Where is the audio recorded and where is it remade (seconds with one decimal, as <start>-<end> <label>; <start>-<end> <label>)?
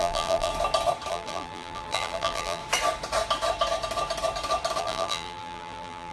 0.0-0.5 remade; 0.5-1.1 recorded; 1.1-2.6 remade; 2.6-4.8 recorded; 4.8-6.1 remade